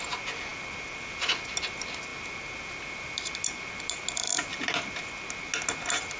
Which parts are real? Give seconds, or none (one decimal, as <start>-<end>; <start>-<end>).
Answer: 0.0-6.2